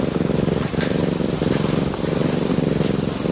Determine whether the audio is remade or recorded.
recorded